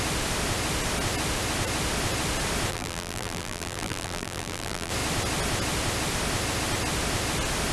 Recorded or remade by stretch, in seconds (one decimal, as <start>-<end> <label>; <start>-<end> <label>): 0.0-2.7 recorded; 2.7-4.9 remade; 4.9-7.7 recorded